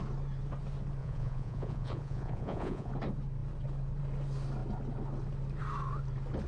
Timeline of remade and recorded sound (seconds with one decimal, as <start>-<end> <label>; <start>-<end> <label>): 0.0-1.0 recorded; 1.0-2.9 remade; 2.9-6.5 recorded